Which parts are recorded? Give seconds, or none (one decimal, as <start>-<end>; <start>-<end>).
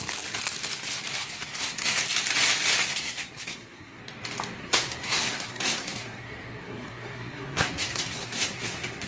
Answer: 0.0-1.2; 2.0-2.9; 4.0-4.6